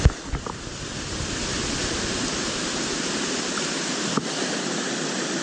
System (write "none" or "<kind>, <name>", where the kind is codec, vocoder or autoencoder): none